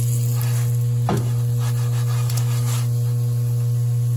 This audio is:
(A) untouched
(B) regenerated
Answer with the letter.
A